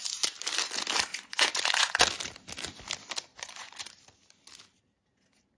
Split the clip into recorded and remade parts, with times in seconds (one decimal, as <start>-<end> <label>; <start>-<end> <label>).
0.0-1.1 recorded; 1.1-2.0 remade; 2.0-3.3 recorded; 3.3-3.9 remade; 3.9-5.6 recorded